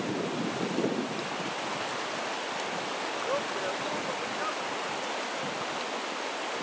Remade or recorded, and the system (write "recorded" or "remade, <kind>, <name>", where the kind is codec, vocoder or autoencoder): recorded